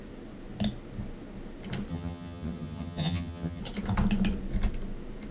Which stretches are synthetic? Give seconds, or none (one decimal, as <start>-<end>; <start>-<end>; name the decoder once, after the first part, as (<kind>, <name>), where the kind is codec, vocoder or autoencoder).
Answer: 1.9-3.6 (vocoder, HiFi-GAN)